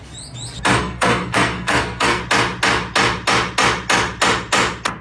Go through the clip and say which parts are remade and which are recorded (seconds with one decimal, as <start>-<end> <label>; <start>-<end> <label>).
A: 0.0-0.8 recorded; 0.8-2.2 remade; 2.2-5.0 recorded